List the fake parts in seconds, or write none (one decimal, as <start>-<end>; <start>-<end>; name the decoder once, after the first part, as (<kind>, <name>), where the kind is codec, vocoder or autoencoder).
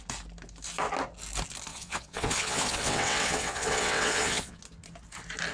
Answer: 1.7-4.6 (vocoder, WaveNeXt)